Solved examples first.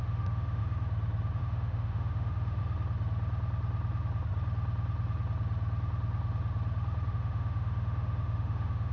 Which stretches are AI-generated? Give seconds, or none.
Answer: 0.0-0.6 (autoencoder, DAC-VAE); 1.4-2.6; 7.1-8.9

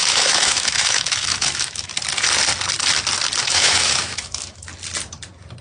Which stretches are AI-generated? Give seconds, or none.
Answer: 0.0-1.9 (autoencoder, DAC-VAE); 3.4-4.7

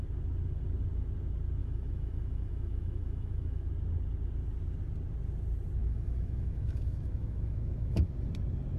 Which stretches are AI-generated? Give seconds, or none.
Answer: 1.6-3.7 (autoencoder, DAC-VAE); 5.8-8.1

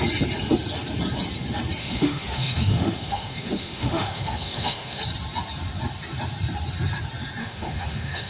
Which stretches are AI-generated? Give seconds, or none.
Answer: 1.8-5.0 (autoencoder, DAC-VAE); 7.4-8.3

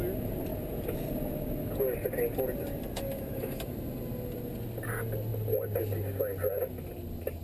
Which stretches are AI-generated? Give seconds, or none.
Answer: 3.1-3.7 (autoencoder, DAC-VAE)

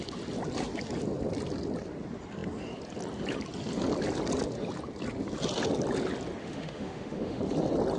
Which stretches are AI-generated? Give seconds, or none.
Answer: 6.4-7.4 (autoencoder, DAC-VAE)

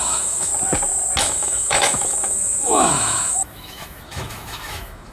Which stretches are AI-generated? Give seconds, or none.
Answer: 0.0-0.5 (autoencoder, DAC-VAE); 1.2-5.1

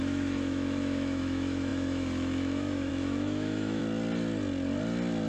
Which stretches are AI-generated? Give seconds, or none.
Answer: 0.0-3.8 (autoencoder, DAC-VAE)